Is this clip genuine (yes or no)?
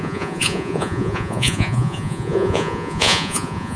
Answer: no